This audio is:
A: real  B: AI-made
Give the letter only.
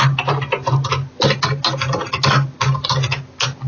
A